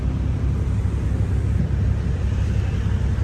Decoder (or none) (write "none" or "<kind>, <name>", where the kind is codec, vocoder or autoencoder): none